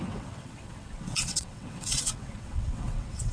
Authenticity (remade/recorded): remade